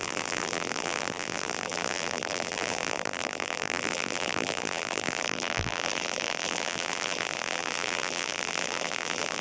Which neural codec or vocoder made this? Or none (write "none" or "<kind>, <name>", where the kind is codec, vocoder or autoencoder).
vocoder, BigVGAN v2